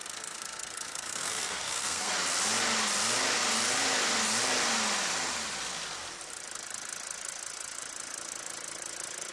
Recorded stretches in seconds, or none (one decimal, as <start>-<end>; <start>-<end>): 2.1-9.3